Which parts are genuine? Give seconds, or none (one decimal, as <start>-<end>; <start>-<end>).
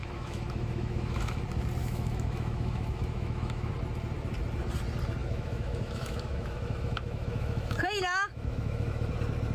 1.4-1.8; 3.7-5.2; 9.1-9.5